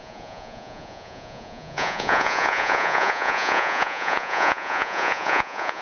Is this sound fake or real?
fake